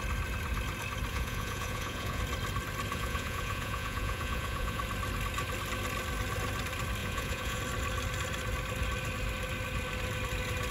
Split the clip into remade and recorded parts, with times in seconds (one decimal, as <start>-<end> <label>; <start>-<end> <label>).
0.0-1.1 recorded; 1.1-2.2 remade; 2.2-2.9 recorded; 2.9-4.8 remade; 4.8-7.0 recorded; 7.0-7.6 remade; 7.6-10.7 recorded